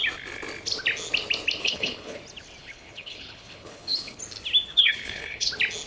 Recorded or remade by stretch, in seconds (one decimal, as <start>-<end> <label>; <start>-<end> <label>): 0.0-1.6 recorded; 1.6-2.2 remade; 2.2-2.6 recorded; 2.6-4.2 remade; 4.2-4.7 recorded; 4.7-5.5 remade; 5.5-5.9 recorded